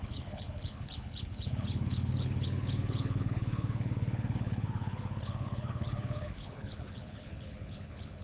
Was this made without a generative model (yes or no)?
no